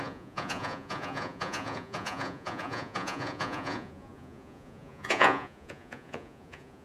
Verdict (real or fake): fake